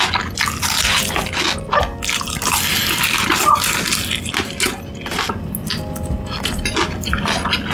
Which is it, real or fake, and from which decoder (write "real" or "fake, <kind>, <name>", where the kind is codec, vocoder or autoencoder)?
real